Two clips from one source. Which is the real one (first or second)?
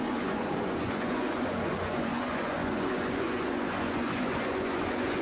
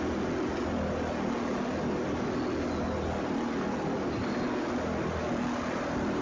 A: second